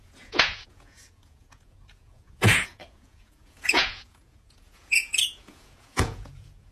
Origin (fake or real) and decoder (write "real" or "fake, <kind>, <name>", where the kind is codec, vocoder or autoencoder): fake, vocoder, Vocos